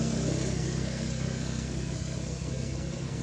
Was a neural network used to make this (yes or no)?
yes